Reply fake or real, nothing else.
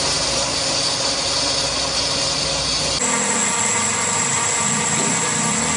real